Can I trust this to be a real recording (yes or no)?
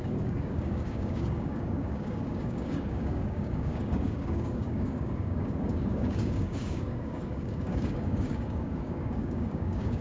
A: no